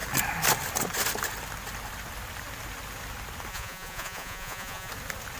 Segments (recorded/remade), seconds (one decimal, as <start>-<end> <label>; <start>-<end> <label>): 0.0-3.5 recorded; 3.5-4.9 remade; 4.9-5.4 recorded